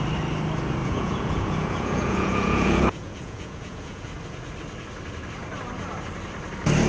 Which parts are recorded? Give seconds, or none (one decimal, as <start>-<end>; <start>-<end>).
0.0-0.8; 4.1-6.9